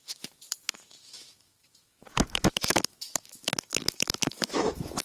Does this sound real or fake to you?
fake